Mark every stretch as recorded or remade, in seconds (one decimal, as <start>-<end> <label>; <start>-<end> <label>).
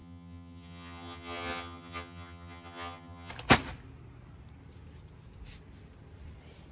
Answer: 0.0-3.3 remade; 3.3-6.7 recorded